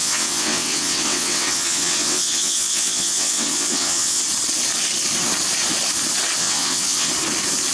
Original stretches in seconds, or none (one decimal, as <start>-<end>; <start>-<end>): 4.2-6.4; 7.1-7.7